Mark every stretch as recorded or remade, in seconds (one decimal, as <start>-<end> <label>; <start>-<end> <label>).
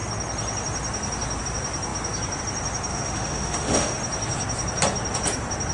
0.0-2.9 recorded; 2.9-4.0 remade; 4.0-5.7 recorded